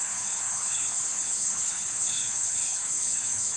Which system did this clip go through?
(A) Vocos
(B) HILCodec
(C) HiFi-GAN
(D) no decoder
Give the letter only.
B